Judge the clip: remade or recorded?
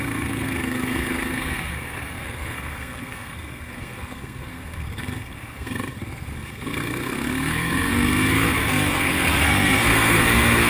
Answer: remade